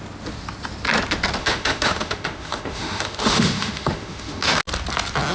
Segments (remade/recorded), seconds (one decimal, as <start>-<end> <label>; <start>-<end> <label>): 0.0-1.4 recorded; 1.4-4.6 remade; 4.6-5.3 recorded